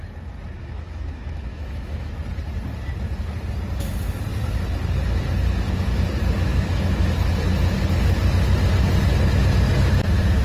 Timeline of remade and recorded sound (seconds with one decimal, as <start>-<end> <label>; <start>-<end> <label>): 0.0-0.6 recorded; 0.6-2.1 remade; 2.1-10.4 recorded